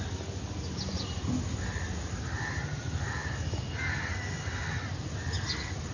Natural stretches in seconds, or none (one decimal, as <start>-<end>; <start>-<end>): 0.0-5.9